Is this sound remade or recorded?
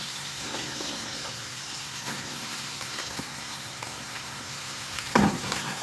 remade